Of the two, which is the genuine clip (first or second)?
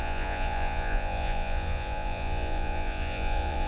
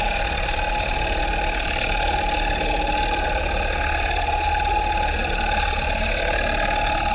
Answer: second